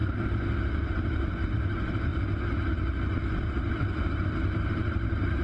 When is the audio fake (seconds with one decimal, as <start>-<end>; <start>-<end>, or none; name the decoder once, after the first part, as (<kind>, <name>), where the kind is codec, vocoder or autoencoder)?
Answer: 1.0-2.1 (vocoder, BigVGAN v2); 4.0-5.4